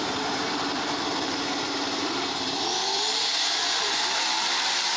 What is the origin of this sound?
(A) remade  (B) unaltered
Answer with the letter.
A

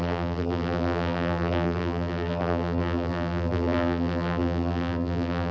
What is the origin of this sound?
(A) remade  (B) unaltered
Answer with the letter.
A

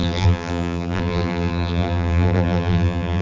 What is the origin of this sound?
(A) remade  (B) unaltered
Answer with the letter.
A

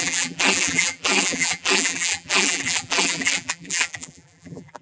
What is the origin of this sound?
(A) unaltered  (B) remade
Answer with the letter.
B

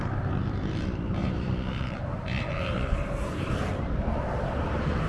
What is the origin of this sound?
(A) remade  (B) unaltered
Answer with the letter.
A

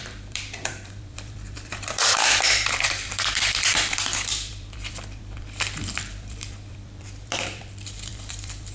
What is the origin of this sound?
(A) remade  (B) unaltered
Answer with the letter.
A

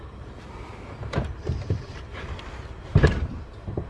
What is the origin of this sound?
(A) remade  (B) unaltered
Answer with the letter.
A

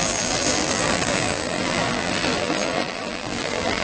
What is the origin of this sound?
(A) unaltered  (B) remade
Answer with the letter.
B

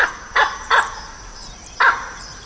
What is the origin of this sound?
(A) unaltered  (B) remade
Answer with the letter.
B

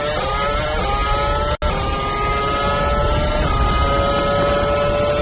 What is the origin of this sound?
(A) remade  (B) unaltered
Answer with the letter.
B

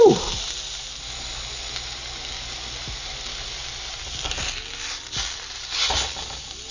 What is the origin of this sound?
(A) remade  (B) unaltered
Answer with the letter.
B